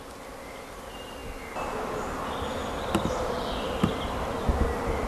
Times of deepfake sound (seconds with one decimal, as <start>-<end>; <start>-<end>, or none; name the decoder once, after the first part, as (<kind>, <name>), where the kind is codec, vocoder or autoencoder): none

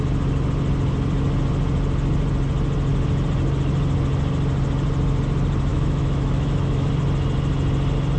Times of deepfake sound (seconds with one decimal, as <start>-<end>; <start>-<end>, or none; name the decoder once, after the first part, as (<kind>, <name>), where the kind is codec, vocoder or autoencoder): 5.7-6.9 (autoencoder, DAC-VAE)

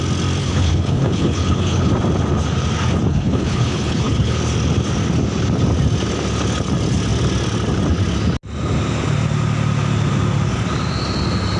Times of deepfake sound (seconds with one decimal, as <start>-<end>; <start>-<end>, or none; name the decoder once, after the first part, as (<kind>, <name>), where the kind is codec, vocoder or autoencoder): 0.4-1.9 (codec, HILCodec); 3.1-4.4